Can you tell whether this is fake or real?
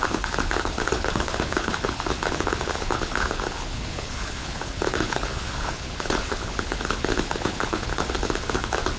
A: fake